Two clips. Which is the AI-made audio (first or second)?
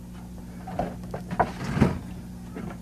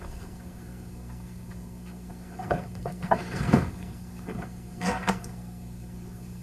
second